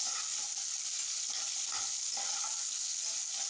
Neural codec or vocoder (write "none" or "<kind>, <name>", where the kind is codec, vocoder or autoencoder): none